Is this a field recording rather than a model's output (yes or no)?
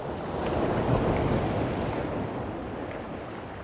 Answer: yes